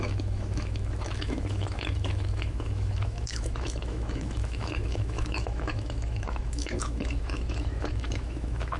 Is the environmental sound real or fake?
fake